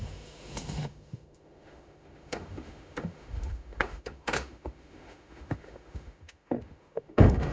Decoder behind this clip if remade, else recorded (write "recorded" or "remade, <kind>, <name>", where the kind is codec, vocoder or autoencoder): remade, autoencoder, DAC-VAE